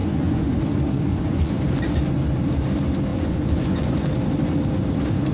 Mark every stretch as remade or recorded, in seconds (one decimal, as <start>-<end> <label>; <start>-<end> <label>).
0.0-0.6 remade; 0.6-1.1 recorded; 1.1-1.6 remade; 1.6-3.1 recorded; 3.1-4.1 remade; 4.1-5.3 recorded